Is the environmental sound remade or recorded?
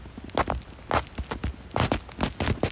recorded